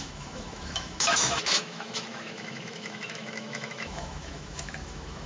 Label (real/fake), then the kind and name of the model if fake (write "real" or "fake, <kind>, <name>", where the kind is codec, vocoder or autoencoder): fake, autoencoder, DAC-VAE